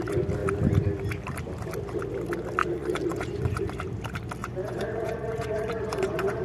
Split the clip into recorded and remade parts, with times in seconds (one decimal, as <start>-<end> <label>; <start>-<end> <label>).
0.0-2.6 recorded; 2.6-3.6 remade; 3.6-4.4 recorded; 4.4-6.4 remade